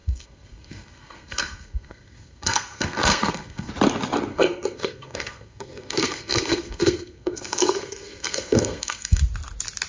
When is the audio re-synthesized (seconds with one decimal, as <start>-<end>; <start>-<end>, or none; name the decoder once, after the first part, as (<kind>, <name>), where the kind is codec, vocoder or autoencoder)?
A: 0.0-3.7 (codec, SNAC); 4.3-9.2